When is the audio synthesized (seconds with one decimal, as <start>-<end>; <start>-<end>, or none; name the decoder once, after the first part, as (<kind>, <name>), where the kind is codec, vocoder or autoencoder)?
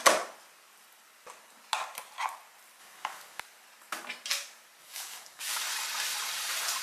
2.8-3.4 (codec, DAC); 4.8-5.6